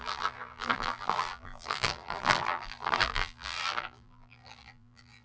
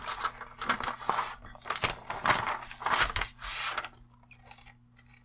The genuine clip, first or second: second